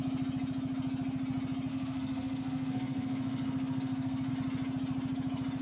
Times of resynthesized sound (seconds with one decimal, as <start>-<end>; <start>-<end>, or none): 1.7-4.3